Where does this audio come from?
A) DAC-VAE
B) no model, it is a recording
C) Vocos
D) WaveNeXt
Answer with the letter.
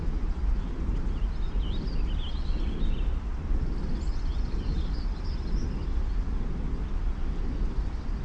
B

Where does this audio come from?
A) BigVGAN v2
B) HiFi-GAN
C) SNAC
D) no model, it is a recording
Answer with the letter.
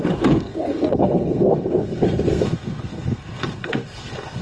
C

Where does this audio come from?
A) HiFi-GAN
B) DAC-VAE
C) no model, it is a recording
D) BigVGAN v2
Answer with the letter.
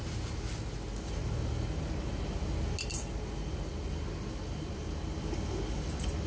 C